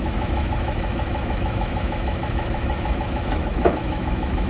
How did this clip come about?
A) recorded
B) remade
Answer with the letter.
B